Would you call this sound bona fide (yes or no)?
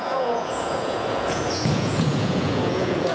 no